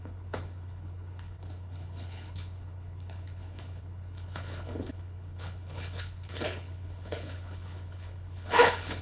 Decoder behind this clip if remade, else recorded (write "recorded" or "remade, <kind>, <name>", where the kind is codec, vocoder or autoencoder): remade, codec, HILCodec